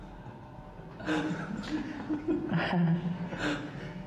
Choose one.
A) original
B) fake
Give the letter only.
A